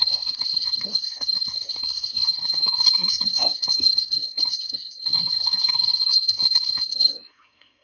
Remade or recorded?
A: remade